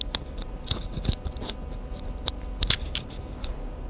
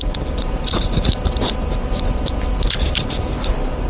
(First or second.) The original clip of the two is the first